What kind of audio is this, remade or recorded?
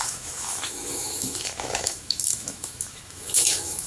remade